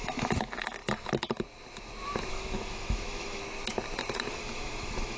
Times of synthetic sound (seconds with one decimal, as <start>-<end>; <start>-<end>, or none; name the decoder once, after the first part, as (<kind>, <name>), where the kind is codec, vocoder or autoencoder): 0.0-0.8 (autoencoder, DAC-VAE); 2.3-3.4; 4.3-5.2